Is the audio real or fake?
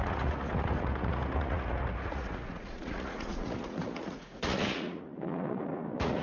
fake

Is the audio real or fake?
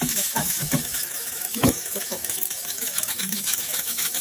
fake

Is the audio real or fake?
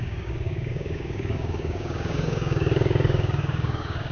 fake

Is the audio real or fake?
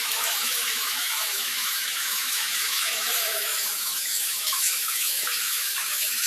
fake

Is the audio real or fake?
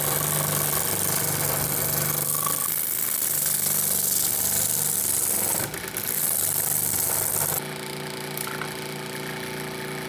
real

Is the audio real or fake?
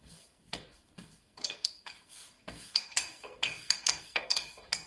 fake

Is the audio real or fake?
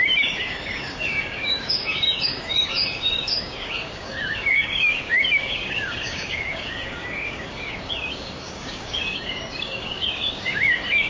fake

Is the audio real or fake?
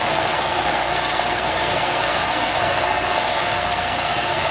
fake